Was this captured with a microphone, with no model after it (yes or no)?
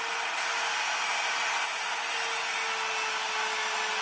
yes